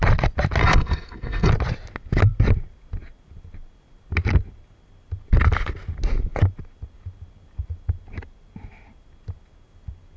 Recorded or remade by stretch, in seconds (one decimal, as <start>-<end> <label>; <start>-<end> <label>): 0.0-0.6 recorded; 0.6-1.5 remade; 1.5-10.2 recorded